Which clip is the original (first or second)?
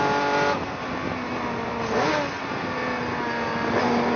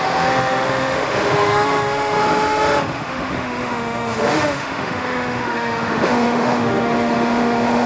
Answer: first